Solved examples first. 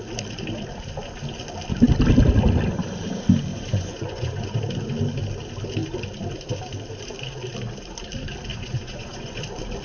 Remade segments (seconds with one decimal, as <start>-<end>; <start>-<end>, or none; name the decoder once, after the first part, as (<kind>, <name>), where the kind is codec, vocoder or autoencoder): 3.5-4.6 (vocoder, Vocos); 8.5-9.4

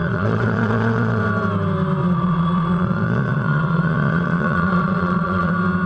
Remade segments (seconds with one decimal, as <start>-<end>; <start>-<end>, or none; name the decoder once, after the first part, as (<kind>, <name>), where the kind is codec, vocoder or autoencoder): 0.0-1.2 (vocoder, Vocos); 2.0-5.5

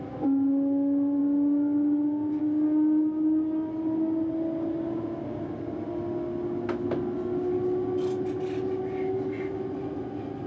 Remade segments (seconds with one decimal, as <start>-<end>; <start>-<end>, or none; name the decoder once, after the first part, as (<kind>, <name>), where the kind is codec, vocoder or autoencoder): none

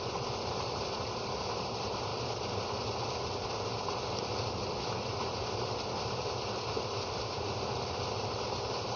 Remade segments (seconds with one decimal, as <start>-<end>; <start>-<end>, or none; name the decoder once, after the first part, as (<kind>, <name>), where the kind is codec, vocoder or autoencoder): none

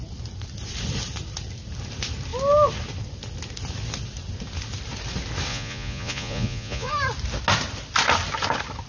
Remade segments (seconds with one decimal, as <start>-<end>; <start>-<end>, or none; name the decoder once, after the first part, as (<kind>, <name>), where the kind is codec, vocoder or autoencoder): 5.5-6.9 (vocoder, Vocos)